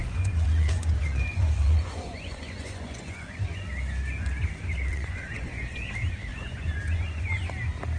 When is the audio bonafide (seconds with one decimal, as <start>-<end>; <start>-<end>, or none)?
3.6-4.9; 5.8-6.3; 7.5-8.0